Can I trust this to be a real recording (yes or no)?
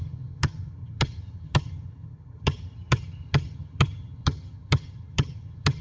no